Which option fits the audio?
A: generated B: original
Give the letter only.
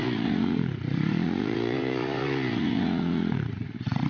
A